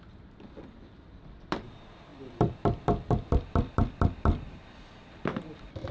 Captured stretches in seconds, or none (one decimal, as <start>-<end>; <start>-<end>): none